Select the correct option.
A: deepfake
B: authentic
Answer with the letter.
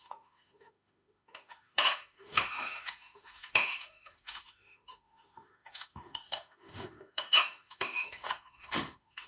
A